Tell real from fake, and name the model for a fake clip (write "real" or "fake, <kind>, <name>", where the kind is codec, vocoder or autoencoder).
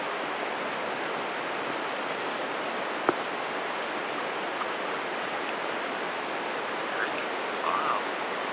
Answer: real